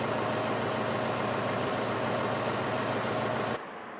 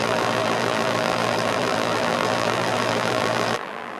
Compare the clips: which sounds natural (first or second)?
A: first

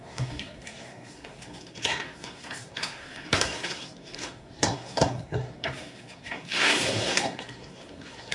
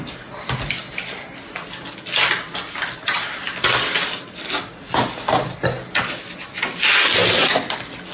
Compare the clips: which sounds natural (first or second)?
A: second